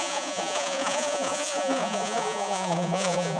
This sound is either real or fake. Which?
fake